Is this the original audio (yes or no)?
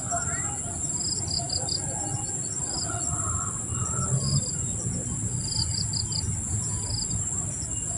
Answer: yes